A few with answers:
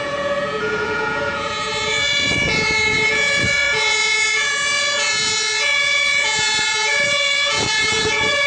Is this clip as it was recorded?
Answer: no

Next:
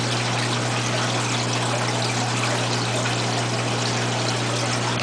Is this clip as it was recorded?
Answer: yes